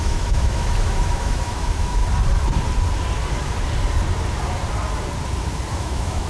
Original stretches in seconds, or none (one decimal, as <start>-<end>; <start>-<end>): 2.0-5.8